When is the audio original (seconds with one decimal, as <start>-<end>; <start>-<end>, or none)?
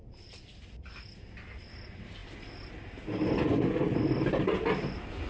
0.0-5.3